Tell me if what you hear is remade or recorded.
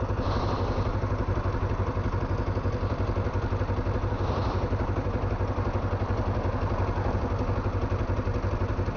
recorded